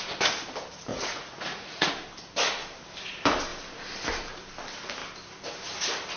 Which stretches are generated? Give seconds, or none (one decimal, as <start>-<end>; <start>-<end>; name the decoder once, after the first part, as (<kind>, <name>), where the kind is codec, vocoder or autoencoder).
0.9-1.9 (vocoder, Vocos)